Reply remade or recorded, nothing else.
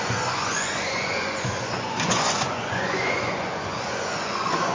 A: remade